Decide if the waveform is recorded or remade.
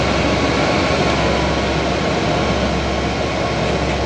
recorded